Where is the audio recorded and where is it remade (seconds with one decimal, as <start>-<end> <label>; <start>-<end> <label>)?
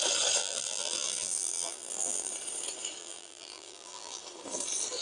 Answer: 0.0-0.4 recorded; 0.4-2.3 remade; 2.3-3.0 recorded; 3.0-4.2 remade; 4.2-5.0 recorded